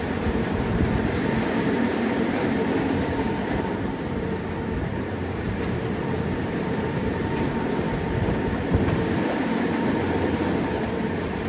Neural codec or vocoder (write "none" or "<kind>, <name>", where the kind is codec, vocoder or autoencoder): vocoder, BigVGAN v2